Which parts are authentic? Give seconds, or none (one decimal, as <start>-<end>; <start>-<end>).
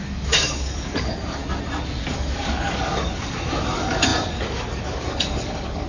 1.4-2.0